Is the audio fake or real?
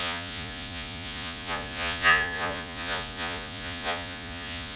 fake